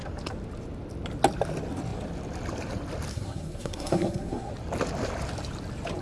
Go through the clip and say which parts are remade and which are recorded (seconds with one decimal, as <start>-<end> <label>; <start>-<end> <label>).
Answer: 0.0-3.1 recorded; 3.1-4.5 remade; 4.5-6.0 recorded